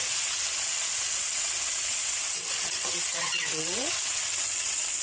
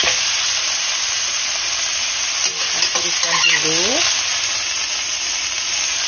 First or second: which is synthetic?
first